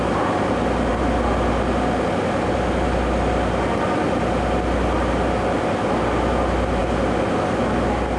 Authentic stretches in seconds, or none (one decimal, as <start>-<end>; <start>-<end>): 0.0-8.2